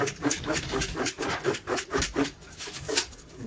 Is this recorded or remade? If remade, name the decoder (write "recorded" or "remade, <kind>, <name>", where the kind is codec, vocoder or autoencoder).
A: remade, codec, DAC